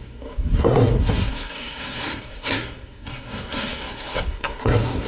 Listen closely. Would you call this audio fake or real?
fake